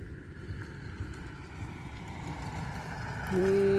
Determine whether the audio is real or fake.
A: real